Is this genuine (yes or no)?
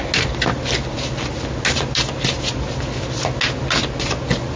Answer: yes